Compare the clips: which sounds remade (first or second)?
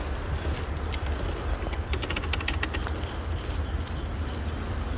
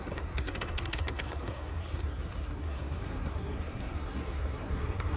second